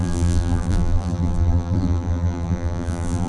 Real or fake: fake